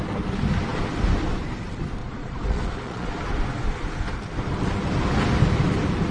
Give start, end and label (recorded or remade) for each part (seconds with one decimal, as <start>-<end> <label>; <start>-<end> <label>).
0.0-2.0 recorded; 2.0-3.1 remade; 3.1-6.1 recorded